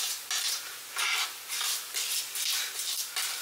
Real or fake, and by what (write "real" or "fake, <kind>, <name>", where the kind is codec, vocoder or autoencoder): real